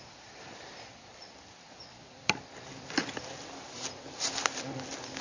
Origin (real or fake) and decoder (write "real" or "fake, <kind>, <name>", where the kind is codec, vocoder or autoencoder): fake, vocoder, BigVGAN v2